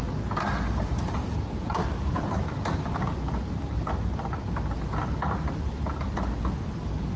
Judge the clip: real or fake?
real